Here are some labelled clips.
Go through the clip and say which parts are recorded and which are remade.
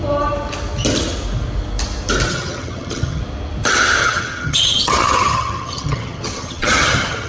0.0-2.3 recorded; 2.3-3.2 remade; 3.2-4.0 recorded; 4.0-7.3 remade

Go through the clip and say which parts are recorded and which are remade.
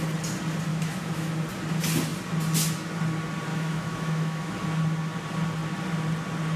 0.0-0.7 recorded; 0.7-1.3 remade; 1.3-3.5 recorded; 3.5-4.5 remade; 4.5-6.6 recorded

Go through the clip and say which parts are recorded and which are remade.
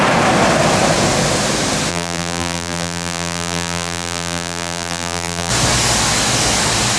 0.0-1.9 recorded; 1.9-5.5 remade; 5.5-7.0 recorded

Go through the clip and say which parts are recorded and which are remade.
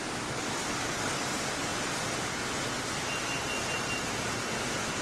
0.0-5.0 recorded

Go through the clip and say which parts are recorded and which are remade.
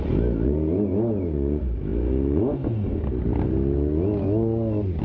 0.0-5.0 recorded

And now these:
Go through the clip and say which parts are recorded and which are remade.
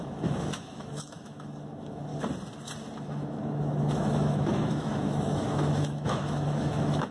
0.0-2.1 remade; 2.1-3.0 recorded; 3.0-7.1 remade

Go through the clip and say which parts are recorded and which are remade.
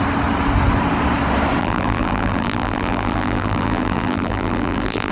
0.0-1.6 recorded; 1.6-5.1 remade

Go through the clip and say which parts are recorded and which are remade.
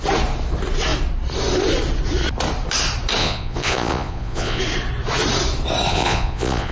0.0-3.2 recorded; 3.2-4.6 remade; 4.6-5.9 recorded; 5.9-6.7 remade